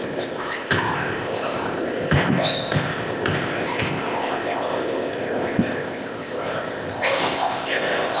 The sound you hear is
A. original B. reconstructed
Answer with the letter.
B